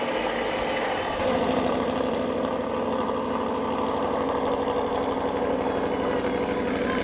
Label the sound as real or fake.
real